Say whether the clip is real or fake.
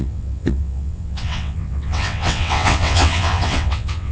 fake